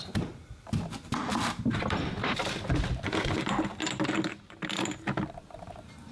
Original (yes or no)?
no